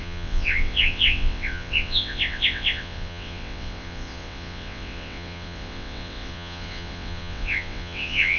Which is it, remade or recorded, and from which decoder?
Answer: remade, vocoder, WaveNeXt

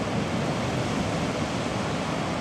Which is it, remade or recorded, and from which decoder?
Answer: recorded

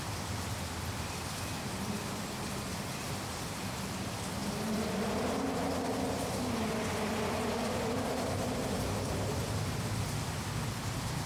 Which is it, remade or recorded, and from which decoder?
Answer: recorded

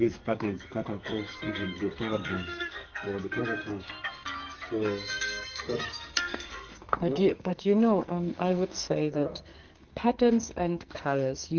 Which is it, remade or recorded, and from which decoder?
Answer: remade, codec, SNAC